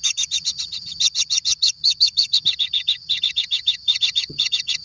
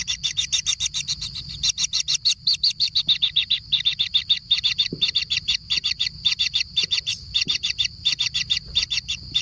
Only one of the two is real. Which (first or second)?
second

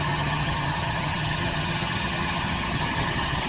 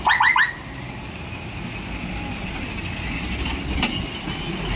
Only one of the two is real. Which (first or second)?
second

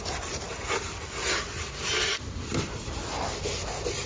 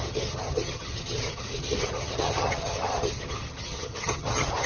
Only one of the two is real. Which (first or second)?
first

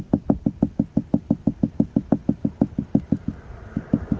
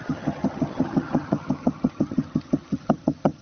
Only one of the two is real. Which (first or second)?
first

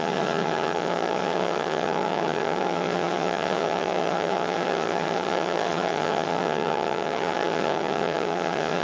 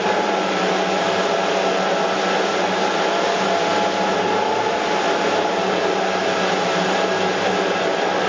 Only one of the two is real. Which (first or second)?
second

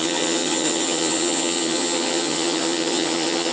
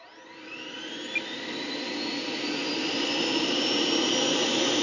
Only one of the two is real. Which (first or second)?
second